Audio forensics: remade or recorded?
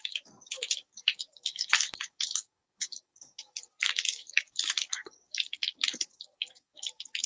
remade